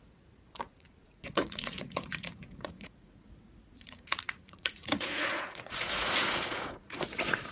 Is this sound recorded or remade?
remade